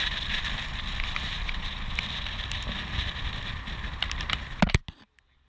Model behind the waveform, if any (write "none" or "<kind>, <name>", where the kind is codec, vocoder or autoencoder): none